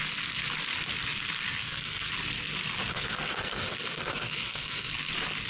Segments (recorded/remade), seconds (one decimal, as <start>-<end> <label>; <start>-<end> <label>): 0.0-1.6 recorded; 1.6-2.1 remade; 2.1-2.9 recorded; 2.9-4.9 remade; 4.9-5.5 recorded